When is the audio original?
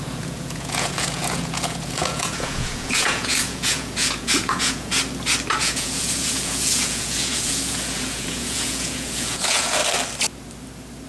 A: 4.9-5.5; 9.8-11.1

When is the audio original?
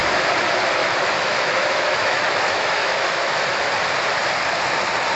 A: 0.0-0.8; 3.7-5.2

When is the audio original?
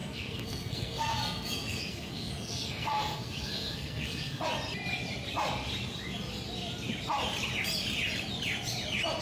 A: 4.4-9.2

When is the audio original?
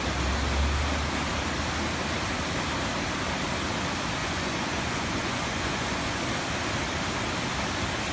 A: 0.0-4.2; 6.2-8.1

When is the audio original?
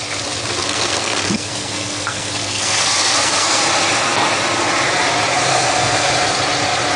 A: 0.0-0.6; 3.6-5.5; 6.1-7.0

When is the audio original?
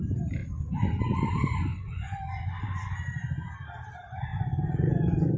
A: 0.0-0.4; 1.0-1.7; 3.0-4.3